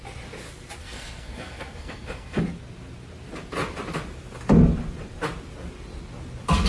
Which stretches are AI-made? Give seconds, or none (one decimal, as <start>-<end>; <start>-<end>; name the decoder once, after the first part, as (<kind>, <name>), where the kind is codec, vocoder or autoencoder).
0.8-2.4 (codec, SNAC)